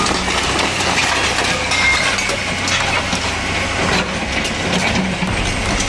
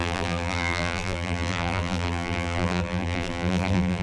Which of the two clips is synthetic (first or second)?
second